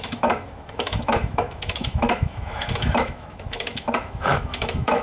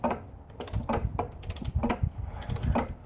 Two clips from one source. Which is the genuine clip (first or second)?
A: second